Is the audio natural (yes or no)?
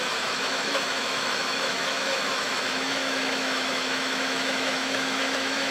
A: no